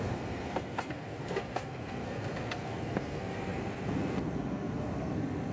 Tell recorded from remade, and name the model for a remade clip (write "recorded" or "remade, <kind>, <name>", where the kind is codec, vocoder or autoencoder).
remade, codec, SNAC